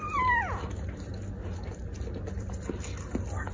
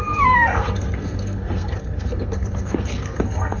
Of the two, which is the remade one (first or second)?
second